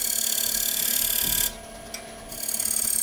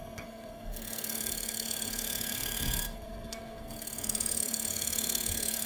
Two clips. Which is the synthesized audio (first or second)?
second